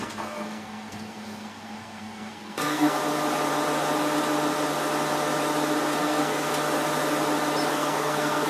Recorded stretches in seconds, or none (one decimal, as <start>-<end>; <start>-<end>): 3.0-6.0; 6.5-7.7